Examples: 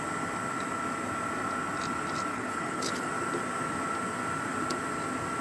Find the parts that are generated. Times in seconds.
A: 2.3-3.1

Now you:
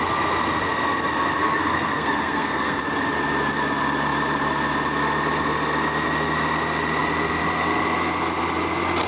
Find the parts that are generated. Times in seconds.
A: 1.4-2.8

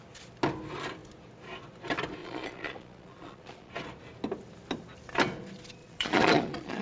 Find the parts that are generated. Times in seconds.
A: 2.2-3.7; 5.8-6.8

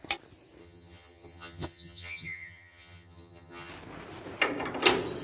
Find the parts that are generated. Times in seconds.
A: 0.6-3.7

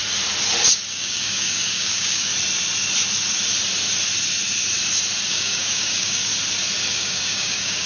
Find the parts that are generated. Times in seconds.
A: 0.9-2.3; 5.3-6.3; 6.9-7.9